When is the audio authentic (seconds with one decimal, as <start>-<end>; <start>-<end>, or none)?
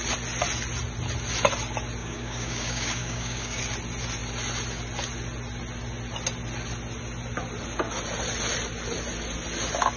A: 0.0-2.0; 3.6-10.0